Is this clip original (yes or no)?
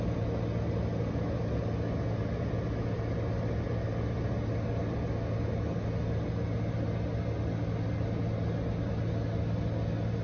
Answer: yes